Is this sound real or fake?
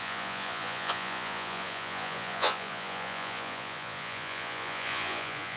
fake